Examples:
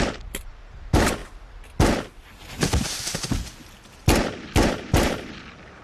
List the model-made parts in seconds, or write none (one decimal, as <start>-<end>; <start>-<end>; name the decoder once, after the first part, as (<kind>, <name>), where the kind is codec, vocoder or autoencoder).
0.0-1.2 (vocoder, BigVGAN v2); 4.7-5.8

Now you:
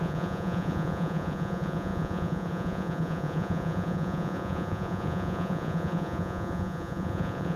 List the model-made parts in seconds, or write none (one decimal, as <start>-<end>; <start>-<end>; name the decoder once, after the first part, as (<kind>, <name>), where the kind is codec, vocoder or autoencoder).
0.0-7.6 (vocoder, Vocos)

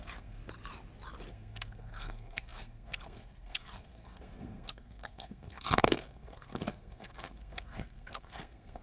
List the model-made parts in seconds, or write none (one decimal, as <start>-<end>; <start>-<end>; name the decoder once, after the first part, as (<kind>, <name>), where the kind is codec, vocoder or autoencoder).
0.0-0.4 (codec, SNAC); 1.3-8.8

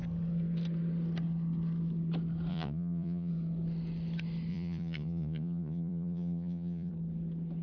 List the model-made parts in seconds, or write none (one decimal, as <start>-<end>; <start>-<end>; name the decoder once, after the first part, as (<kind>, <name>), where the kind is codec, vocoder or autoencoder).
2.5-3.3 (vocoder, Vocos); 4.5-6.9

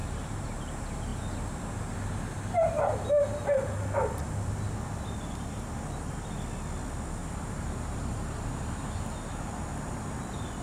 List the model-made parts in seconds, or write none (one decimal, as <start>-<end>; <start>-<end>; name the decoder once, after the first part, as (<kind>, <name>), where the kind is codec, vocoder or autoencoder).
0.0-0.7 (vocoder, BigVGAN v2); 7.2-8.6

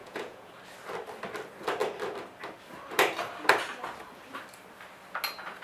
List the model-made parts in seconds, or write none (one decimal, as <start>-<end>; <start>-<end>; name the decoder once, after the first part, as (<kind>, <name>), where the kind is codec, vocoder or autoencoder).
0.0-0.5 (vocoder, Vocos)

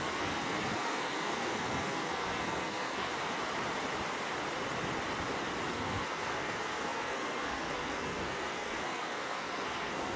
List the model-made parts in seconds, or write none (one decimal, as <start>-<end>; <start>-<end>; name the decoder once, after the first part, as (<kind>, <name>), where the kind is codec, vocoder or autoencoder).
0.0-3.1 (codec, SNAC); 5.7-10.2

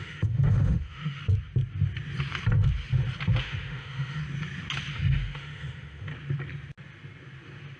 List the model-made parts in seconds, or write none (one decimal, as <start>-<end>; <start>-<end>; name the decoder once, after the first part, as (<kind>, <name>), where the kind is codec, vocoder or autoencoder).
0.0-1.2 (autoencoder, DAC-VAE); 3.4-4.2; 4.9-6.1